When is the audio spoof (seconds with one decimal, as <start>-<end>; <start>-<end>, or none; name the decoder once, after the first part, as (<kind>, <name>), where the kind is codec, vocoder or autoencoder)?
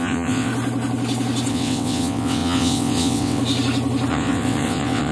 0.0-0.5 (vocoder, WaveNeXt); 1.5-3.4; 4.1-5.1